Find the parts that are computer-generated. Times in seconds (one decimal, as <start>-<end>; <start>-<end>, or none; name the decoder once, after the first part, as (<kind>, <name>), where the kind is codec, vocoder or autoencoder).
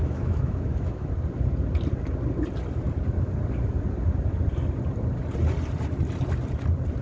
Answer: 0.0-1.1 (autoencoder, DAC-VAE)